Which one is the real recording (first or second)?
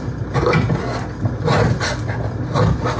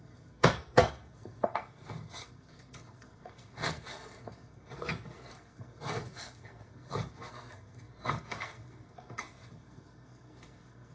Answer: first